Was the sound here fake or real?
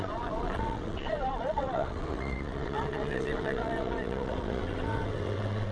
fake